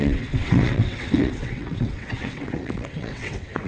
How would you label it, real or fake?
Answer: fake